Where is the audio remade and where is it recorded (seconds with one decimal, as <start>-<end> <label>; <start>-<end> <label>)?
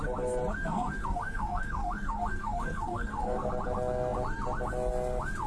0.0-0.6 recorded; 0.6-3.5 remade; 3.5-5.5 recorded